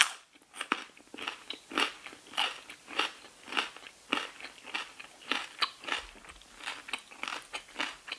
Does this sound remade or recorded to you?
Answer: recorded